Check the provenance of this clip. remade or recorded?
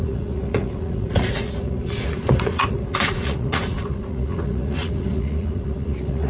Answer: remade